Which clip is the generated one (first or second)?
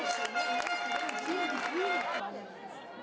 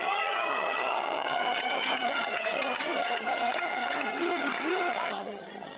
second